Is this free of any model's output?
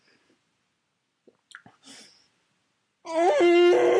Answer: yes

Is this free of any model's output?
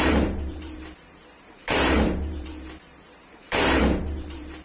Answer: no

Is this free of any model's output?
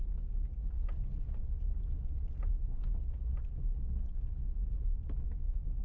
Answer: yes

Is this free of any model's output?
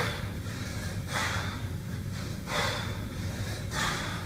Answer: no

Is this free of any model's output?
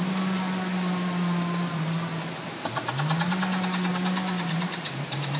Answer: yes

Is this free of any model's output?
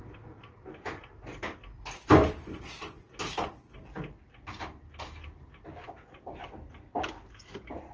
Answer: yes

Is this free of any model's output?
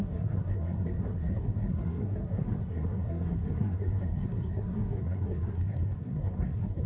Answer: no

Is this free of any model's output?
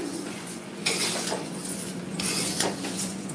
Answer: no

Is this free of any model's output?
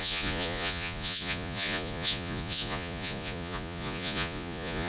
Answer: no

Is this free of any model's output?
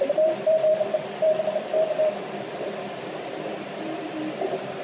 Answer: no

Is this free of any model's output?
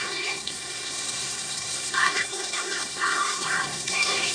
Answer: no